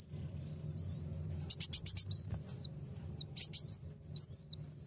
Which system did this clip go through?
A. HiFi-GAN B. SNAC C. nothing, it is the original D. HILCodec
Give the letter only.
C